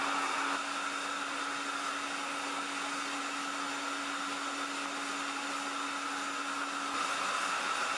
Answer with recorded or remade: recorded